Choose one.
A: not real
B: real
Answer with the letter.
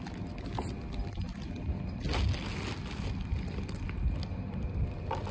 B